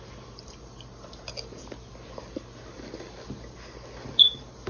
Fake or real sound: real